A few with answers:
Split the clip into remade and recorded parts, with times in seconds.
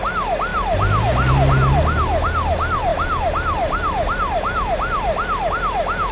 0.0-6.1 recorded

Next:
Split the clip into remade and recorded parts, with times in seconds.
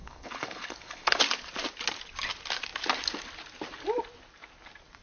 0.0-1.2 remade; 1.2-5.0 recorded